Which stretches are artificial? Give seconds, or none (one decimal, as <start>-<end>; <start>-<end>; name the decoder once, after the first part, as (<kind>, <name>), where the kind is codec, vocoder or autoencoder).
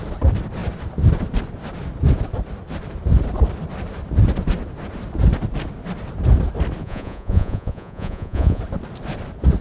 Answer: 6.8-8.6 (vocoder, Vocos)